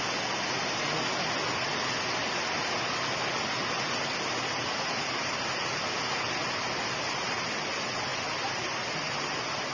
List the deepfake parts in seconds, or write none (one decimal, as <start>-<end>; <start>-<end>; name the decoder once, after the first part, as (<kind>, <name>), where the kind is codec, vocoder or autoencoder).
none